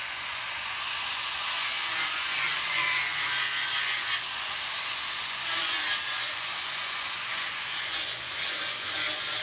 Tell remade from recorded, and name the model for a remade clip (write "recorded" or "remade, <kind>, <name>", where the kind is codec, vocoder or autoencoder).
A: remade, vocoder, Vocos